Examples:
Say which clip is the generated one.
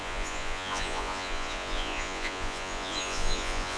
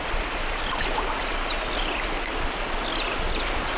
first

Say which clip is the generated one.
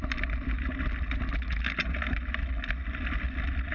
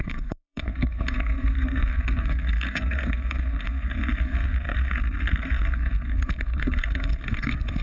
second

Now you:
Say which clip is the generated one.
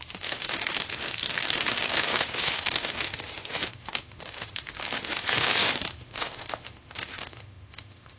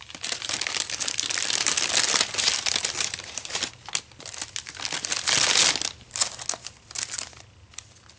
first